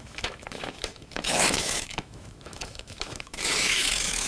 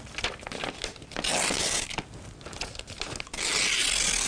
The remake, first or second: first